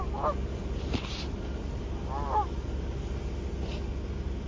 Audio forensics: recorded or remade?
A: recorded